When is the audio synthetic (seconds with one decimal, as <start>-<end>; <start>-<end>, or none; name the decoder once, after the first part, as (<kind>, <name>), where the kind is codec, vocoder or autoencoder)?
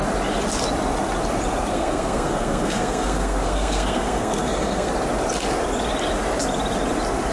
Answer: 1.7-4.9 (codec, SNAC)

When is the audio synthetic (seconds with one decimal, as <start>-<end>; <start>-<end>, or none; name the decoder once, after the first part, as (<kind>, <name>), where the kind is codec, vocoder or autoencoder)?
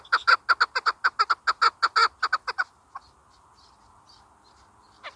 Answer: none